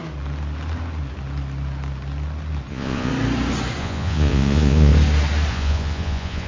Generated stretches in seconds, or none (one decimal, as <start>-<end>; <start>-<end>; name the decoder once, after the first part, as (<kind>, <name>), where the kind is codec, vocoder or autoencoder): 2.7-3.1 (vocoder, Vocos); 3.8-4.9; 5.5-6.5